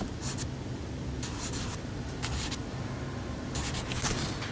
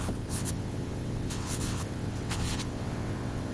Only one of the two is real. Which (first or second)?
first